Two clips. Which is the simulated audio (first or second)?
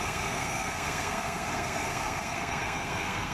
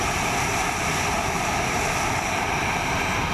first